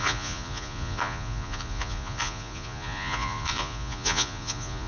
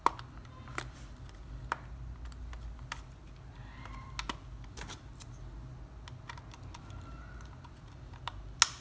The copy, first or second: first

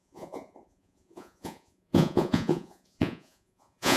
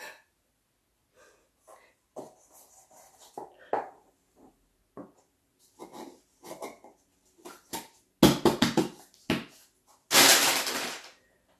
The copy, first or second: first